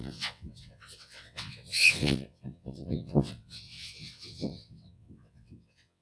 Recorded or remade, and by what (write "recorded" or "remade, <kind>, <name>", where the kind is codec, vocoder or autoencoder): remade, vocoder, WaveNeXt